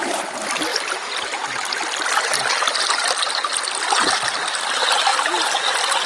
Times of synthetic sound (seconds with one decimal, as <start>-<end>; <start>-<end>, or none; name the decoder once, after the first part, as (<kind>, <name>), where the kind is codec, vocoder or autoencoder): none